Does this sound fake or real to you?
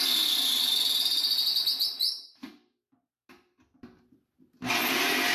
real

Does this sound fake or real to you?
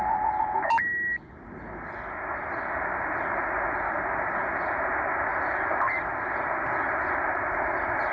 real